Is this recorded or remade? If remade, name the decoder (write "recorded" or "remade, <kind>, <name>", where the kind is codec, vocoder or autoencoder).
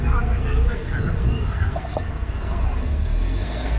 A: remade, codec, SNAC